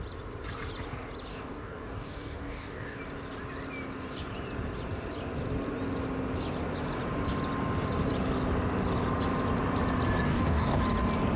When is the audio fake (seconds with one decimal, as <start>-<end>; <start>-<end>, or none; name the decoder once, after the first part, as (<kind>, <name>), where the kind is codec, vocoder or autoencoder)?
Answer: 1.3-3.0 (codec, DAC); 10.3-10.8